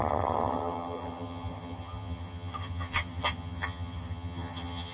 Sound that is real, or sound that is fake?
fake